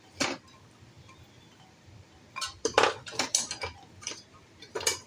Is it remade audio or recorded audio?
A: remade